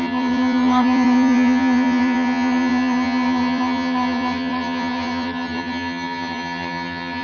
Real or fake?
fake